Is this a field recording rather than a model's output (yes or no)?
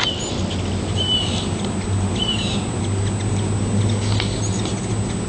yes